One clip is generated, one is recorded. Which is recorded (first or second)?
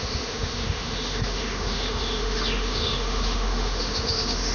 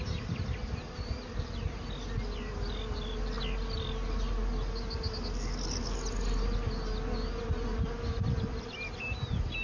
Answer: second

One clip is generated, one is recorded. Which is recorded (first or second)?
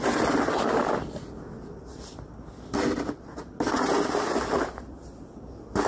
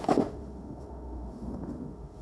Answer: first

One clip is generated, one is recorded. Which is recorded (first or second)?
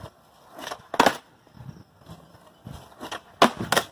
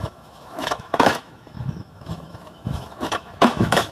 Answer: first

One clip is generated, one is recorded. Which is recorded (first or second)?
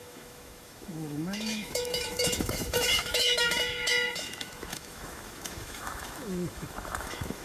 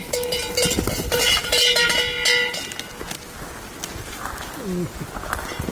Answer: second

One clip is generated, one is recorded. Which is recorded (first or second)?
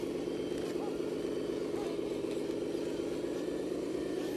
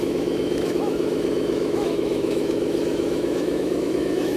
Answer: first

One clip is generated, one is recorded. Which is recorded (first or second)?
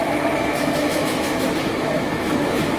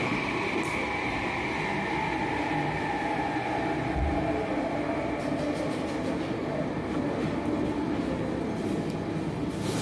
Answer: second